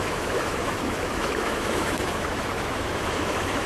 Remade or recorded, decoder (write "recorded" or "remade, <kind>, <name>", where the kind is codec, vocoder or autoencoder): remade, autoencoder, DAC-VAE